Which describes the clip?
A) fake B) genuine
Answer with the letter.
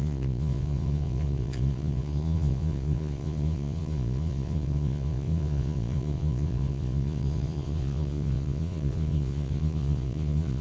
A